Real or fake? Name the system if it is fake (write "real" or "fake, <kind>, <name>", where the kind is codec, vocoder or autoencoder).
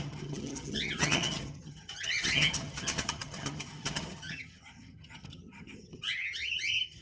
fake, vocoder, HiFi-GAN